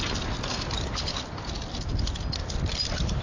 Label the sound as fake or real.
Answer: real